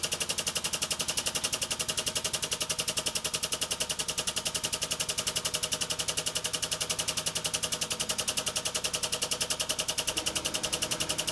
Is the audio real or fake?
real